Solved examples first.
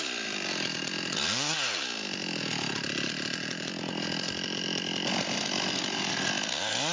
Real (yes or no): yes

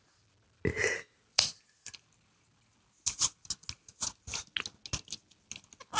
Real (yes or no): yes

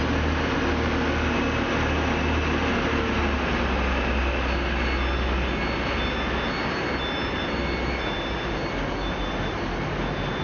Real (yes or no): yes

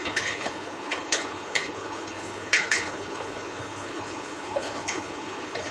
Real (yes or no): no